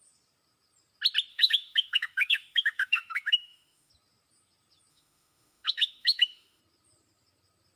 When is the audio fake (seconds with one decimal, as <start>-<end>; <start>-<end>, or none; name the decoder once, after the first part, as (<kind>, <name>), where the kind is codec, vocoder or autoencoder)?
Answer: 1.3-3.9 (autoencoder, DAC-VAE); 4.9-6.6